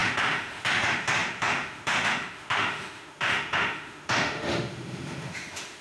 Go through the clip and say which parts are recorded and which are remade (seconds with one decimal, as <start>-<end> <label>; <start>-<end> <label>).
0.0-5.8 remade